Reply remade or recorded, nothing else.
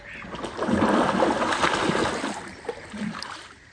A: recorded